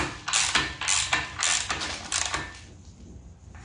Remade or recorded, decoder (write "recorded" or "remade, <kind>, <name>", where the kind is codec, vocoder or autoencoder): recorded